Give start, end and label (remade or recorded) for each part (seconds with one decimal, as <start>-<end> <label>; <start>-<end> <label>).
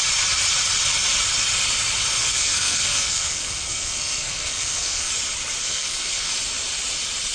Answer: 0.0-2.2 recorded; 2.2-5.1 remade; 5.1-5.6 recorded; 5.6-6.3 remade; 6.3-7.3 recorded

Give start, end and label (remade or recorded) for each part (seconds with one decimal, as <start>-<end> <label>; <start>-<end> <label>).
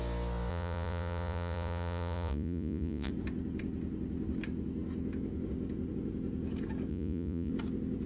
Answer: 0.0-0.5 recorded; 0.5-3.1 remade; 3.1-6.9 recorded; 6.9-7.5 remade; 7.5-8.1 recorded